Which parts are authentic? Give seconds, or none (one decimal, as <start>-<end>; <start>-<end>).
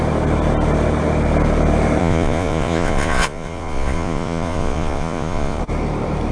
0.0-2.0; 5.6-6.3